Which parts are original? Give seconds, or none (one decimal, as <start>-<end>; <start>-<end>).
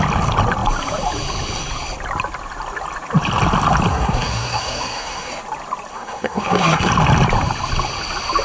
0.0-3.9; 5.3-5.9; 6.9-8.4